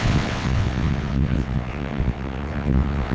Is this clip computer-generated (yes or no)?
yes